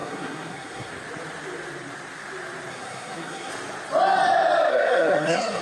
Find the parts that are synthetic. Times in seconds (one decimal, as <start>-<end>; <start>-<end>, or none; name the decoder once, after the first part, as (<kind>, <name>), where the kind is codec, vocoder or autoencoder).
0.0-0.9 (codec, SNAC); 2.7-3.5; 4.7-5.6